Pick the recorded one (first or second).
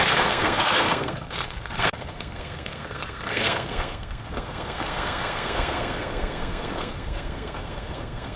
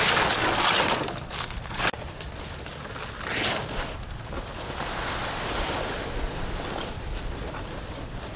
second